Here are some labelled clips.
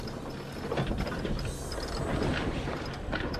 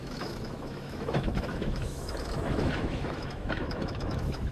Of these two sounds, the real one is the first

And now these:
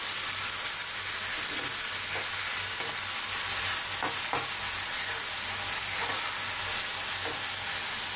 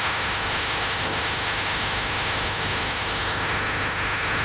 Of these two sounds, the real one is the first